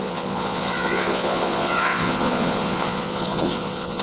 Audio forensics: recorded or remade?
remade